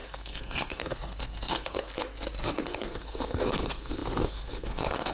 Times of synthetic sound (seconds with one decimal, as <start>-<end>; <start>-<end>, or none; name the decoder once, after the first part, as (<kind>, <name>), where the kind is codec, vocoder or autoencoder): 0.0-1.9 (codec, SNAC); 2.5-5.1